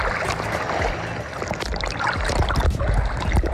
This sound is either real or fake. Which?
real